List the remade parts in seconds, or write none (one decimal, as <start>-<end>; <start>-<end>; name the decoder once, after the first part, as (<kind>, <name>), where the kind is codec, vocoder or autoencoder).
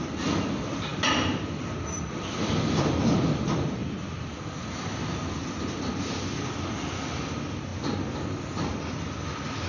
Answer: 0.9-2.5 (vocoder, BigVGAN v2)